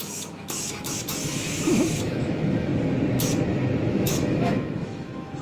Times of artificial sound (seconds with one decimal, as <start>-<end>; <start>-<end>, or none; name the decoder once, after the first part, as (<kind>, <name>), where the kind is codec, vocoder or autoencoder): 0.0-2.7 (autoencoder, DAC-VAE); 3.9-5.4

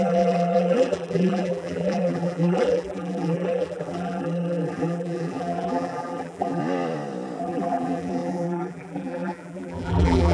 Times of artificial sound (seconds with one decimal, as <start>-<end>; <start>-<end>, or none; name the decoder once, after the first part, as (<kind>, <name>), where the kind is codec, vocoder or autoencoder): 0.0-6.6 (vocoder, BigVGAN v2); 7.4-10.3

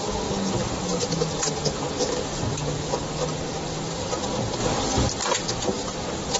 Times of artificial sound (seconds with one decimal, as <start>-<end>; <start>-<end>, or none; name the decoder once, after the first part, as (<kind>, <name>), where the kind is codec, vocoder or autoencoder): none

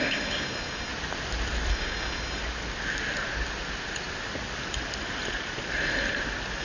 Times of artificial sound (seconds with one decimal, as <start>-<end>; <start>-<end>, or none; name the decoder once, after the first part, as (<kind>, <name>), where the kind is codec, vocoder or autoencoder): 0.0-0.9 (codec, DAC); 1.7-2.4